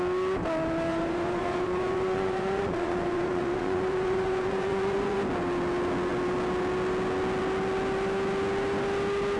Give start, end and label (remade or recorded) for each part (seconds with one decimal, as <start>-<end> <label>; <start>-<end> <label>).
0.0-0.9 recorded; 0.9-5.2 remade; 5.2-9.4 recorded